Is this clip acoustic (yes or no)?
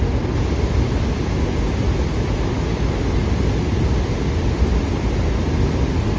yes